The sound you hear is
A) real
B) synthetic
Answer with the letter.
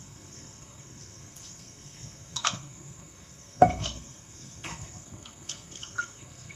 B